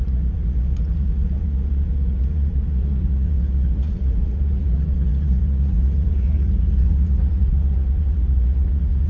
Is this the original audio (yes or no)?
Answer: no